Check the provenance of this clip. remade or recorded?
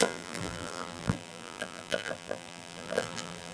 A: remade